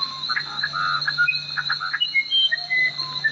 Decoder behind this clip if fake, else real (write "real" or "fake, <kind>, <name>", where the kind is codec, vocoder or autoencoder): real